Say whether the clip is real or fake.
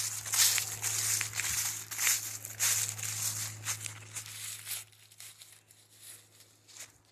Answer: real